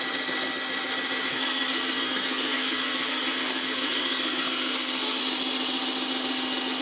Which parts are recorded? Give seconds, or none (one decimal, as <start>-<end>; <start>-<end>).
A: 0.0-1.3; 5.2-6.8